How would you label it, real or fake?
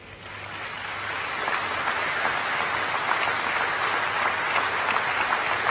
real